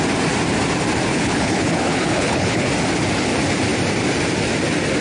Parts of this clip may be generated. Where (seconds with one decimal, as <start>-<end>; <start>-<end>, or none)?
1.1-2.7